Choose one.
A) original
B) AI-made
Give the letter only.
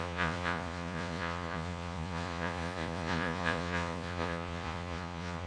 B